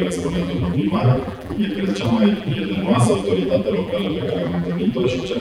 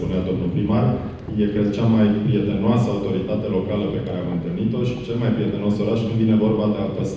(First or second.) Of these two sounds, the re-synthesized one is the first